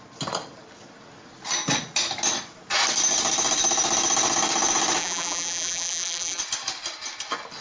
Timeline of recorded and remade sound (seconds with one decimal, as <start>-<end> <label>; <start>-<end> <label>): 0.0-5.0 recorded; 5.0-6.4 remade; 6.4-7.6 recorded